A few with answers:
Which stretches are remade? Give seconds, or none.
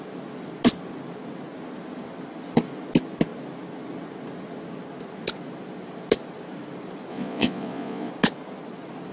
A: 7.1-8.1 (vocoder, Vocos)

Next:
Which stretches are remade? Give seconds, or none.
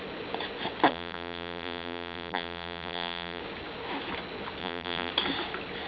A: 0.9-3.4 (vocoder, BigVGAN v2); 4.6-5.1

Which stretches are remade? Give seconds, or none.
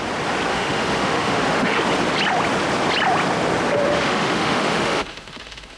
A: 0.5-1.8 (autoencoder, DAC-VAE); 3.9-5.8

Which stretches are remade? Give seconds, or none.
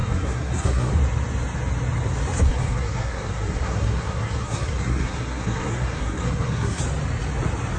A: 0.0-0.9 (codec, SNAC); 2.5-6.8